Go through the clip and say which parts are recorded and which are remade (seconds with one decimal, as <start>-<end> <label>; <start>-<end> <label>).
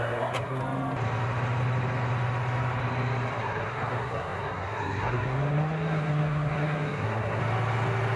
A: 0.0-0.6 remade; 0.6-3.4 recorded; 3.4-7.4 remade; 7.4-8.2 recorded